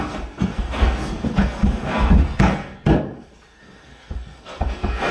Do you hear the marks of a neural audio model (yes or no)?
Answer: yes